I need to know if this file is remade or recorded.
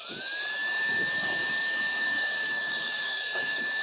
remade